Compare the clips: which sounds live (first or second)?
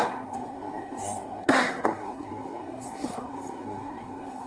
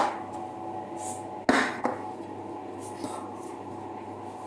second